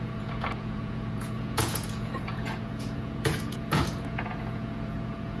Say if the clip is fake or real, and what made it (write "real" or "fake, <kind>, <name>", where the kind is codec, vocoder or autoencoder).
fake, vocoder, Vocos